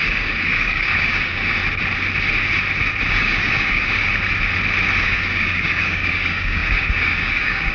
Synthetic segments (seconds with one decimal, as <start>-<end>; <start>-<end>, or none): 0.0-1.6; 3.1-4.1; 5.0-7.7